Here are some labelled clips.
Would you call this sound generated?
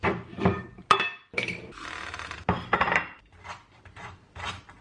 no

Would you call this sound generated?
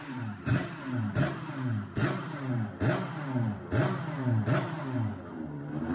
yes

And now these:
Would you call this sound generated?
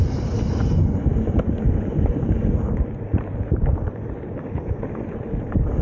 yes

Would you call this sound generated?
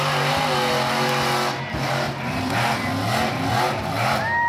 no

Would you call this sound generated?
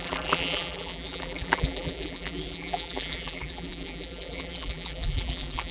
yes